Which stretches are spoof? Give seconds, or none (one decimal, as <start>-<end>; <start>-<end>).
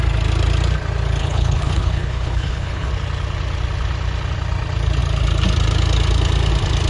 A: 1.2-2.9